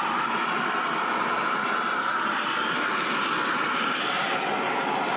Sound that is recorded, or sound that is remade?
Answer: recorded